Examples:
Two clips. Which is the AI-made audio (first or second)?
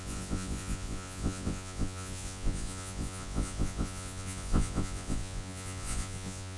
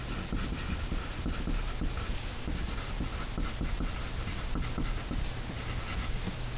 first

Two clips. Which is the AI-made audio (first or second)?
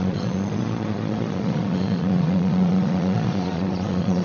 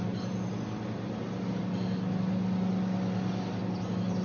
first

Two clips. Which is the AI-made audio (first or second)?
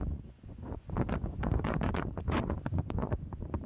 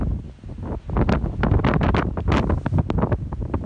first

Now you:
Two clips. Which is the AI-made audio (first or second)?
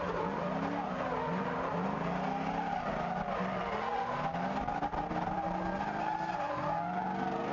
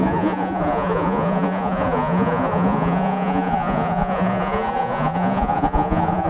second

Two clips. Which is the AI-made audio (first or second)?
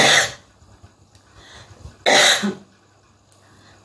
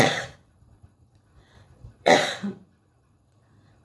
second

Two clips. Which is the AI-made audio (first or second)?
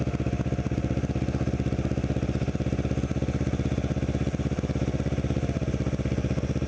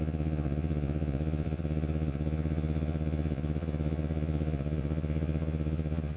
second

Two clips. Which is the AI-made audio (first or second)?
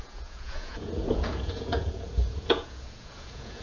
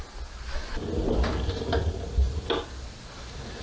first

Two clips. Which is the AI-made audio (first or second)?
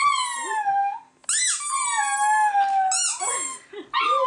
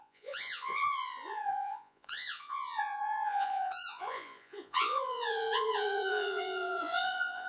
second